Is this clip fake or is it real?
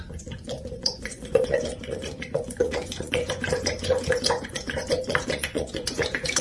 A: fake